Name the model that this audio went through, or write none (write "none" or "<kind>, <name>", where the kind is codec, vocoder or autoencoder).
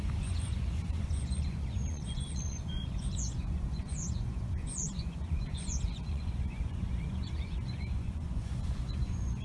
vocoder, Vocos